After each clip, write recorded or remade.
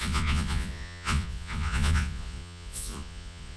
remade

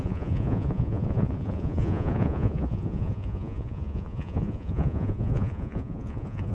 remade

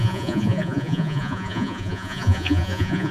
remade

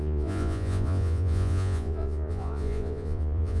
remade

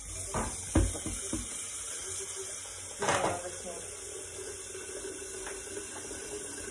recorded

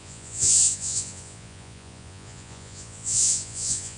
remade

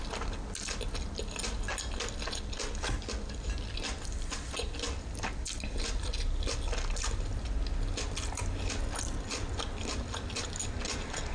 recorded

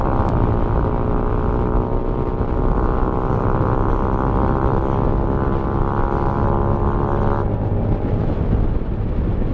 recorded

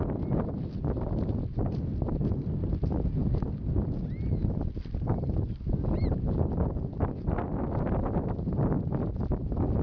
recorded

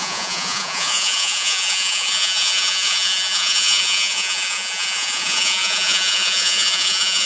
remade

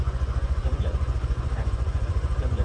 remade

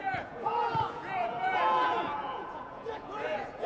remade